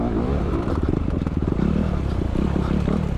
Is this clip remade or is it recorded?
recorded